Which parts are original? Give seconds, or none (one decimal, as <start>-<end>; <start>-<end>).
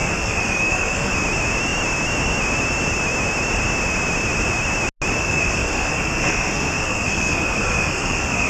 1.1-5.2